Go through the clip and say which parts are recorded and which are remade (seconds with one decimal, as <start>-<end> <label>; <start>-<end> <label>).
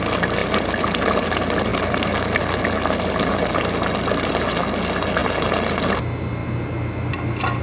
0.0-7.6 recorded